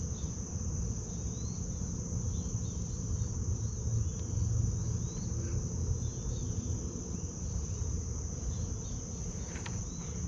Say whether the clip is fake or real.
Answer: real